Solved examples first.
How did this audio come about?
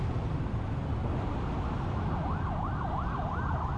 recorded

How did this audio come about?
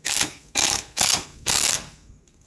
remade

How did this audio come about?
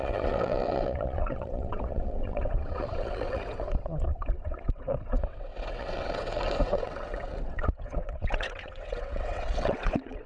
remade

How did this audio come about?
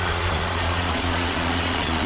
remade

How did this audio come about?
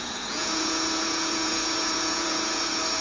remade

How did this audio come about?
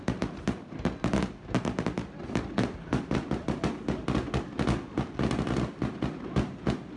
recorded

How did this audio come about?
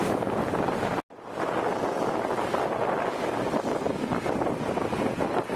recorded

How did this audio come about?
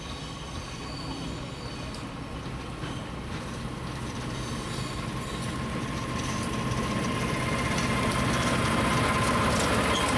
recorded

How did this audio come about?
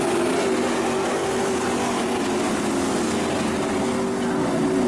recorded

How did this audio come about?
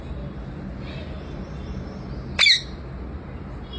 recorded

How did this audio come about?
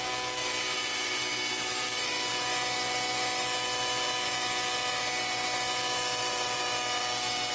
recorded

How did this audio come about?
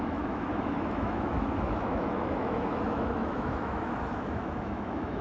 remade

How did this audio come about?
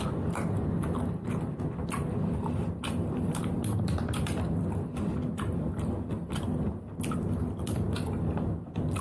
recorded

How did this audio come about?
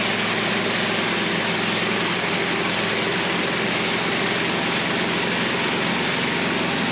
recorded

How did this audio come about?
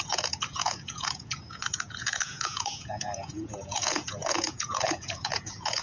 remade